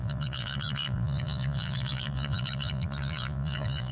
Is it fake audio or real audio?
fake